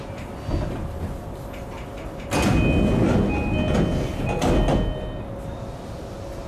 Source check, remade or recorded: recorded